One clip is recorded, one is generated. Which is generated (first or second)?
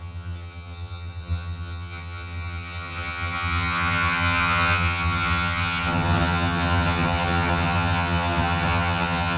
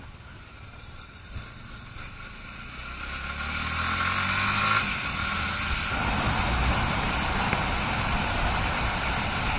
first